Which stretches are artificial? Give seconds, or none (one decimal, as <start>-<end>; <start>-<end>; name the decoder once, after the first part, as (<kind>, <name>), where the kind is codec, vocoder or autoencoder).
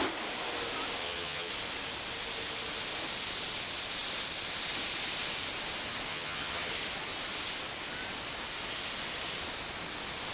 1.0-1.5 (vocoder, HiFi-GAN); 6.1-6.7